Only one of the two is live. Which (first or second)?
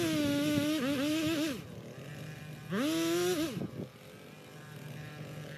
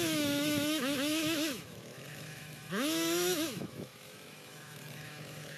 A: first